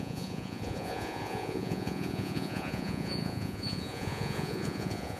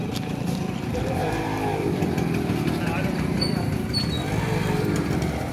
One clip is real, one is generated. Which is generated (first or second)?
first